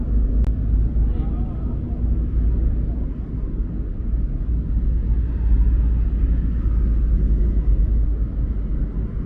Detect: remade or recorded recorded